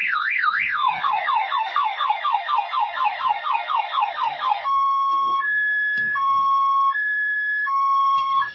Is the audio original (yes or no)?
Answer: no